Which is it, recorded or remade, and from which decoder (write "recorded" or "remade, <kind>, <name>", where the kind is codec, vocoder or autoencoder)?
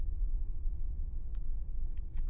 remade, vocoder, Vocos